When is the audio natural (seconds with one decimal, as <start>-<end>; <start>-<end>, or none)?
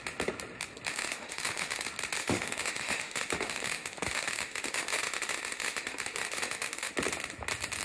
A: 0.0-0.9; 1.8-2.2; 6.9-7.8